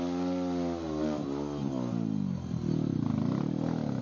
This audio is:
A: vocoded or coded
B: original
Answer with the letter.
B